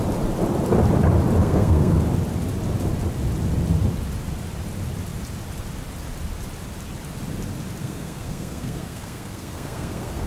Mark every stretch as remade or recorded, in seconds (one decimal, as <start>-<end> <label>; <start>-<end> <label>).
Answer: 0.0-1.4 recorded; 1.4-2.0 remade; 2.0-7.8 recorded; 7.8-10.3 remade